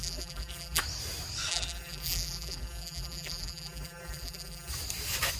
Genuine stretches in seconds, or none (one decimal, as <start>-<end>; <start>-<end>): 0.8-1.5; 4.7-5.4